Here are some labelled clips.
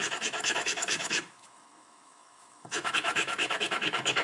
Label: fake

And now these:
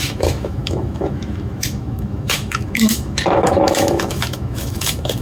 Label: fake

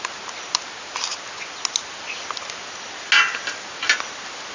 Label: real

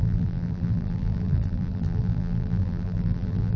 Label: fake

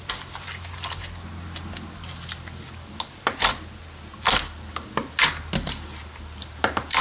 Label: real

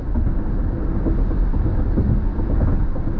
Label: real